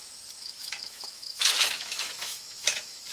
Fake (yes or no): yes